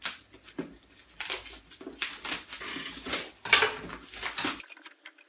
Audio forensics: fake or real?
real